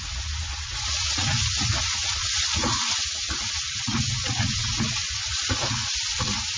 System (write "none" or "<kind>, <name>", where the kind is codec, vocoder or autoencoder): vocoder, Vocos